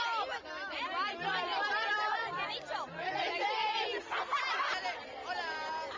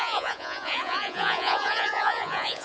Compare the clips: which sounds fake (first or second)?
second